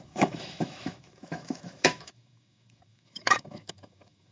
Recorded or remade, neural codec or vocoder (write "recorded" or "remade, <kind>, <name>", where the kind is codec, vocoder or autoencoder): remade, autoencoder, DAC-VAE